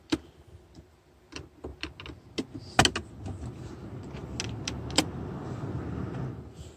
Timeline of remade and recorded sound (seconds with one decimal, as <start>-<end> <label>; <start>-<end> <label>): 0.0-6.8 recorded